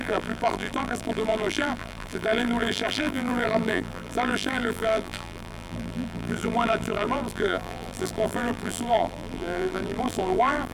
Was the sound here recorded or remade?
remade